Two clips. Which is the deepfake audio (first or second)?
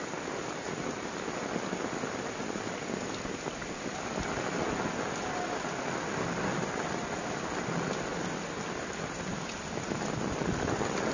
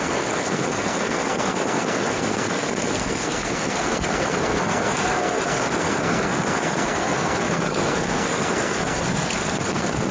second